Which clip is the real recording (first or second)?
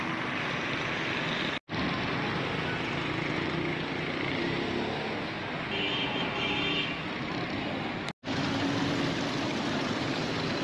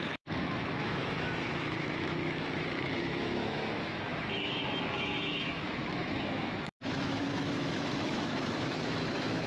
first